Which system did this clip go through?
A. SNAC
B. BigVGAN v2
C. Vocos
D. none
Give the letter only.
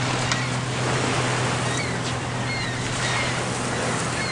D